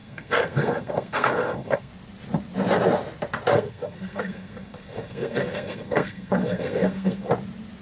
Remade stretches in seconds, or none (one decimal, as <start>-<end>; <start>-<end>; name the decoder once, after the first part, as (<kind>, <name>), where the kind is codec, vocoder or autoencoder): 0.0-1.9 (codec, SNAC); 3.5-7.3